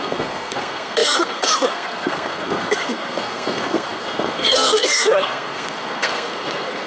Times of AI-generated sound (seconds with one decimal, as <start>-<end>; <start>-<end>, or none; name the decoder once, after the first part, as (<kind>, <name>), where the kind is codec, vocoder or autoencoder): 0.0-6.9 (codec, SNAC)